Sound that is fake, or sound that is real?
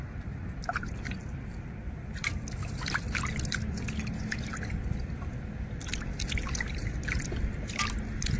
real